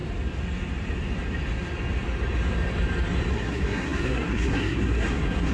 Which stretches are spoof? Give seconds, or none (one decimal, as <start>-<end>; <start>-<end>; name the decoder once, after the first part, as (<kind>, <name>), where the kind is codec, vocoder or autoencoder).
3.3-5.5 (codec, SNAC)

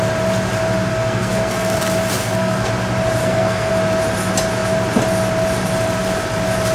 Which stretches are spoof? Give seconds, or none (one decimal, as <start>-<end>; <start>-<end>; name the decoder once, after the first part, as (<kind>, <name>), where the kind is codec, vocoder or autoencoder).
0.9-1.8 (codec, SNAC); 2.2-2.7; 3.2-3.7

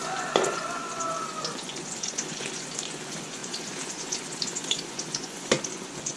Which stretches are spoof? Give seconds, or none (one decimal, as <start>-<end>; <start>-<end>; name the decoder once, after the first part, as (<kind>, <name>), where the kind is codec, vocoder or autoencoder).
0.0-6.2 (vocoder, Vocos)

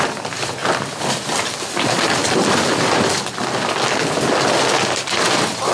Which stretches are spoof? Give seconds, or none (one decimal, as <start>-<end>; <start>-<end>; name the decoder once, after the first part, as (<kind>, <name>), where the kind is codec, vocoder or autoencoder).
none

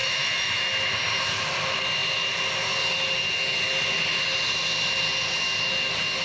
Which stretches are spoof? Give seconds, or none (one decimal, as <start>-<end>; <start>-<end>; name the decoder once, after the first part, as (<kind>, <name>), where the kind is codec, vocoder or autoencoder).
0.0-0.7 (autoencoder, DAC-VAE)

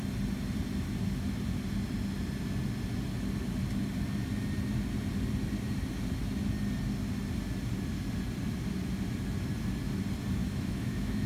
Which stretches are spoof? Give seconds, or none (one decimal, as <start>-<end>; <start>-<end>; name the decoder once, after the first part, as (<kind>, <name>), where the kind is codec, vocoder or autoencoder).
10.4-11.3 (autoencoder, DAC-VAE)

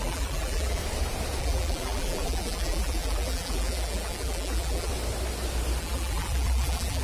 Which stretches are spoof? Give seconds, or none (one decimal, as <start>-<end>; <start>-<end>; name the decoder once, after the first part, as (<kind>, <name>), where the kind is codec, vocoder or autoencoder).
0.0-0.8 (vocoder, BigVGAN v2); 1.4-4.9; 5.8-7.0

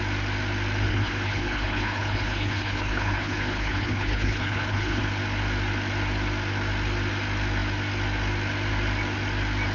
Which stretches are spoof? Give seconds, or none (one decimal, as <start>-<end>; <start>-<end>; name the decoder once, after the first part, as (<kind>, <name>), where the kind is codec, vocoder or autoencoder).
0.9-5.0 (codec, HILCodec)